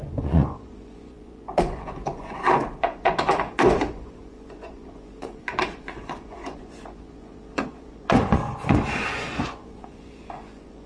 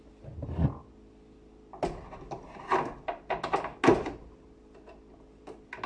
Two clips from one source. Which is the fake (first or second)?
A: first